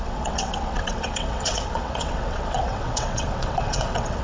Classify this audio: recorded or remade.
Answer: remade